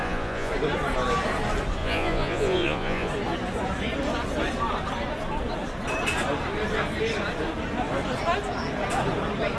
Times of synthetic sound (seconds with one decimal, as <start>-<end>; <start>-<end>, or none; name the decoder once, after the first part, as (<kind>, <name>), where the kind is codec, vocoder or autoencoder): 0.0-0.5 (vocoder, Vocos); 1.8-3.1